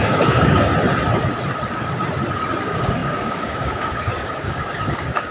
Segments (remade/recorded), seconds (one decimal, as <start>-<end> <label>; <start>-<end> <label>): 0.0-0.7 remade; 0.7-2.6 recorded; 2.6-5.3 remade